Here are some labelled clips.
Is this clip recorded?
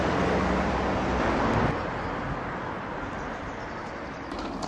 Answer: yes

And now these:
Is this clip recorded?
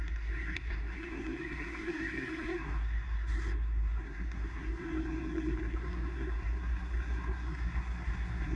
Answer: no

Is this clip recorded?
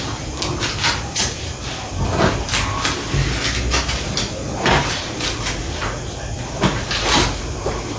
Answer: yes